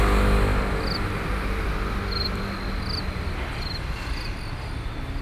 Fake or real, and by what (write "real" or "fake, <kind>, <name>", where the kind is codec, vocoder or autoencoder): real